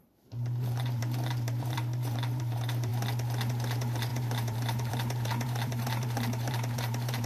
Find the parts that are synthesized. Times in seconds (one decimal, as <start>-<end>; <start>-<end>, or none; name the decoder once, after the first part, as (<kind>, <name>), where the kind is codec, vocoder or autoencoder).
0.0-2.9 (vocoder, BigVGAN v2); 3.5-7.3